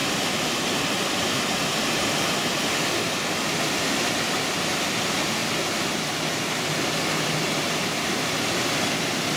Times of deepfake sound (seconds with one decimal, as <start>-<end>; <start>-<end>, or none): none